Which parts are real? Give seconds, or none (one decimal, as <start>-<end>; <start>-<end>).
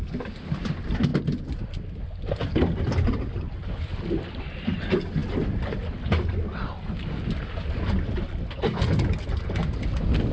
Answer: 0.0-10.3